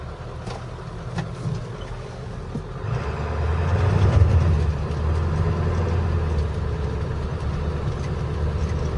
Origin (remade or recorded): recorded